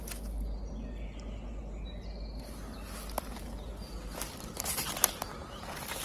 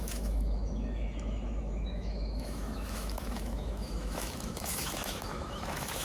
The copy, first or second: second